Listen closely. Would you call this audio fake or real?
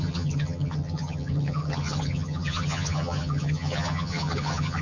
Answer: fake